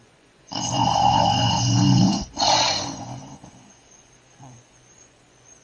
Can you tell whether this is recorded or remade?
remade